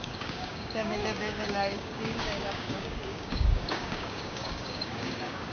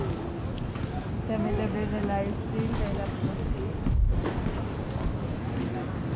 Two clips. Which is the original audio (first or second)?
second